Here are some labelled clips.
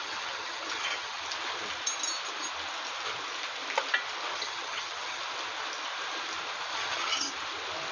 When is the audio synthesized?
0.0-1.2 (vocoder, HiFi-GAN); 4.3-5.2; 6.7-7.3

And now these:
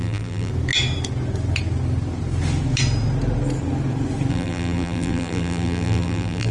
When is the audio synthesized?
0.0-0.5 (vocoder, BigVGAN v2); 4.3-6.5

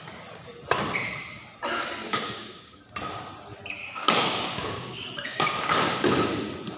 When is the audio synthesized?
2.0-2.8 (codec, DAC); 3.8-5.7

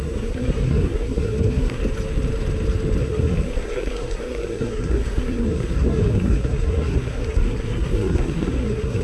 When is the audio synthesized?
0.0-1.8 (codec, SNAC); 3.0-9.0

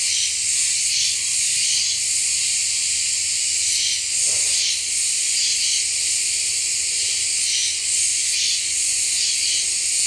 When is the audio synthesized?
7.6-9.3 (vocoder, Vocos)